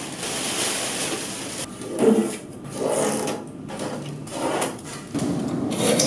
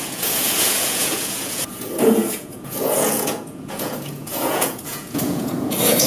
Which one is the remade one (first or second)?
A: second